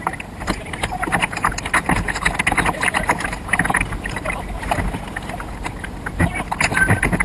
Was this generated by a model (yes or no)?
no